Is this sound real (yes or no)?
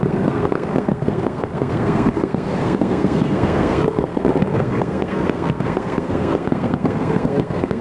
no